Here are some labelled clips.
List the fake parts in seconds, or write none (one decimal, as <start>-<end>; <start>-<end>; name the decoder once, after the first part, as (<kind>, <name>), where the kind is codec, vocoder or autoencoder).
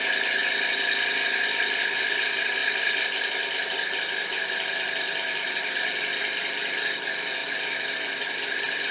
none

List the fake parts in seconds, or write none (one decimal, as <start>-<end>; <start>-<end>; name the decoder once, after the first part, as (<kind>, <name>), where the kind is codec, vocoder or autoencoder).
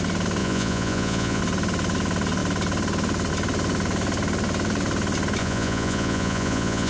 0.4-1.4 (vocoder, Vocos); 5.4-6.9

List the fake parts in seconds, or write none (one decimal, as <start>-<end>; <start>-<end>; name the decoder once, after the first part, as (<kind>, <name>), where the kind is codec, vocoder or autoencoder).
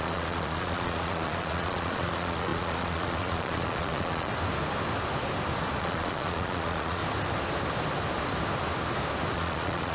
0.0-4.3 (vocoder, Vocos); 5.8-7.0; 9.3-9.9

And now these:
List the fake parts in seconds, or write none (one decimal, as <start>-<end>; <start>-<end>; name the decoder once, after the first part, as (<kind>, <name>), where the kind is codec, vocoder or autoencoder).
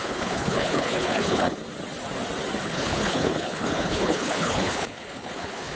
0.0-1.6 (codec, HILCodec); 2.6-5.8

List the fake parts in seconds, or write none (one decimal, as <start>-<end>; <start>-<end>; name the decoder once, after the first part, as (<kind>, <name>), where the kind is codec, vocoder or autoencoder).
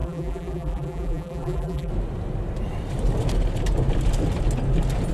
0.0-1.9 (vocoder, BigVGAN v2)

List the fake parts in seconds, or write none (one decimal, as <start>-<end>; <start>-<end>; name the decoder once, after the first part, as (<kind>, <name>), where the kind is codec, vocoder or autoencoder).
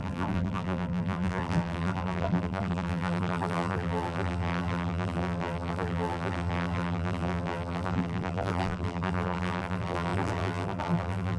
0.0-11.4 (vocoder, BigVGAN v2)